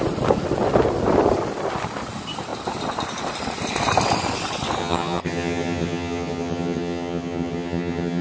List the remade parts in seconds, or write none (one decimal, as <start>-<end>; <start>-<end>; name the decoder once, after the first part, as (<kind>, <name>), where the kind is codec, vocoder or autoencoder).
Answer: 4.8-8.2 (vocoder, HiFi-GAN)